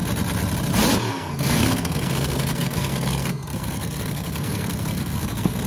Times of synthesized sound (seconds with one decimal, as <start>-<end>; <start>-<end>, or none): 1.1-5.7